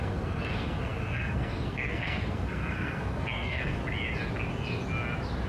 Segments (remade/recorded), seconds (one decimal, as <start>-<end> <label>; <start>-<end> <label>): 0.0-3.8 remade; 3.8-5.5 recorded